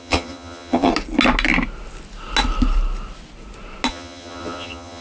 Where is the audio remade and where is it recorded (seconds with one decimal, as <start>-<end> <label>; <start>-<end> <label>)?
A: 0.0-0.9 remade; 0.9-3.9 recorded; 3.9-5.0 remade